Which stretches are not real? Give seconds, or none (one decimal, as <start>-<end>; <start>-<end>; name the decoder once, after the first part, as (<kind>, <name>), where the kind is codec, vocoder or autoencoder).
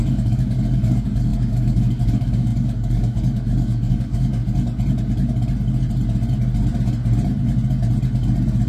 0.0-4.4 (codec, DAC)